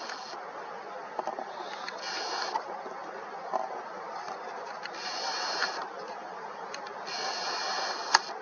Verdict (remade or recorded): recorded